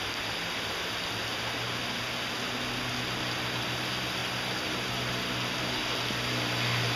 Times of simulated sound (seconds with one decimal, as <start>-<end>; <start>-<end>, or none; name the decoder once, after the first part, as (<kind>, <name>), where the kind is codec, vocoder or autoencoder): none